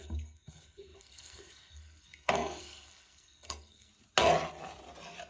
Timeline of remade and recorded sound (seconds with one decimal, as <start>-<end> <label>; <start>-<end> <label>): 0.0-3.9 remade; 3.9-5.3 recorded